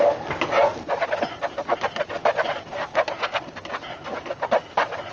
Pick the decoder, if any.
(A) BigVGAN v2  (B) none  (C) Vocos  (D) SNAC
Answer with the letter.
B